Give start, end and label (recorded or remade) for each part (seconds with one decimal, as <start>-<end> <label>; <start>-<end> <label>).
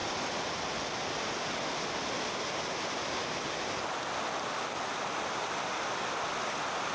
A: 0.0-3.0 recorded; 3.0-4.3 remade; 4.3-6.9 recorded